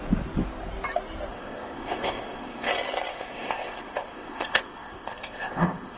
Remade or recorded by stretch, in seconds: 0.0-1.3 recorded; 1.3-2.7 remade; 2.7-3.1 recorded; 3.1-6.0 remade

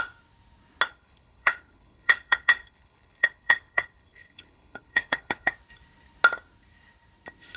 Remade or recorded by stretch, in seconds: 0.0-0.9 recorded; 0.9-5.5 remade; 5.5-7.6 recorded

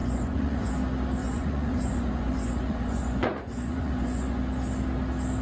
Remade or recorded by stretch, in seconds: 0.0-0.7 remade; 0.7-1.2 recorded; 1.2-4.4 remade; 4.4-5.4 recorded